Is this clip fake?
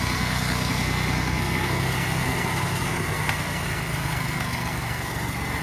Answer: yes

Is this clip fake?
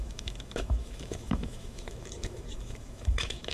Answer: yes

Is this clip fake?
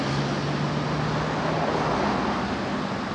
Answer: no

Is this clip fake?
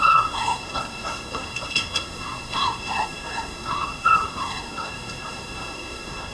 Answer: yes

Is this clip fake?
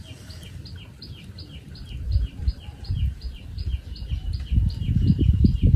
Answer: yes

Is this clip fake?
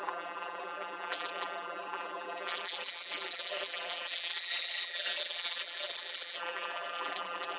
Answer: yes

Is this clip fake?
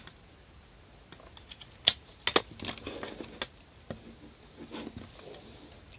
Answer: no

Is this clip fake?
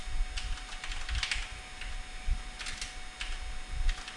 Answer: no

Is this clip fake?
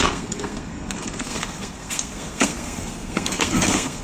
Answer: yes